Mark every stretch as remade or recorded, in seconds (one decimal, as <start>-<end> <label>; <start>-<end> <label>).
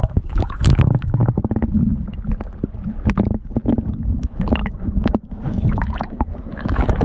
0.0-1.2 remade; 1.2-3.9 recorded; 3.9-7.0 remade